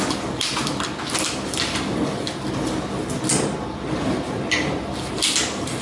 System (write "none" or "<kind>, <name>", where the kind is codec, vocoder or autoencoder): none